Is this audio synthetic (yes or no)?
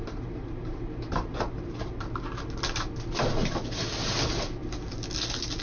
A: no